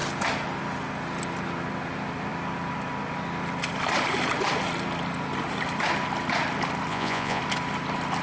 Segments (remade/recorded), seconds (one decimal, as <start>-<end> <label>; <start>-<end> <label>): 0.0-6.9 recorded; 6.9-7.4 remade; 7.4-8.2 recorded